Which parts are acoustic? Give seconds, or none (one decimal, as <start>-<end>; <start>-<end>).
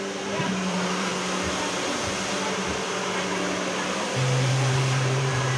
1.1-4.5